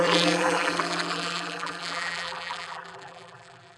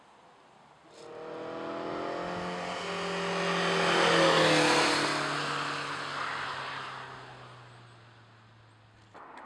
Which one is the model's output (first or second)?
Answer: first